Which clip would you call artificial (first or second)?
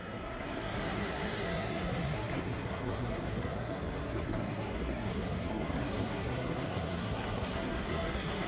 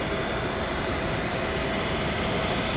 first